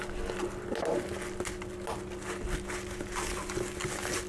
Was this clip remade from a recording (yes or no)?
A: no